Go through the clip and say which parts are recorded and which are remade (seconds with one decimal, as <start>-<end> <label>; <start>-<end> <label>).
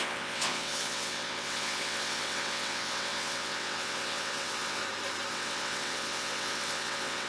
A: 0.0-4.8 remade; 4.8-5.3 recorded; 5.3-7.3 remade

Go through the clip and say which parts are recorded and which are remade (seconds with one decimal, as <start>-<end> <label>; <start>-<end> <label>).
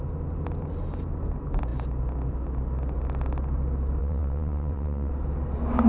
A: 0.0-4.0 recorded; 4.0-5.1 remade; 5.1-5.9 recorded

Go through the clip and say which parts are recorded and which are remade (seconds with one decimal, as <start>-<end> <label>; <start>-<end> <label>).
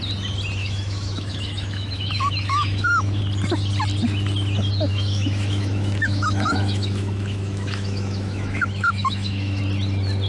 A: 0.0-0.6 recorded; 0.6-3.2 remade; 3.2-4.9 recorded; 4.9-9.6 remade; 9.6-10.3 recorded